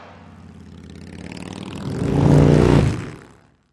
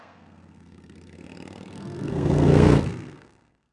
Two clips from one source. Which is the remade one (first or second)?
second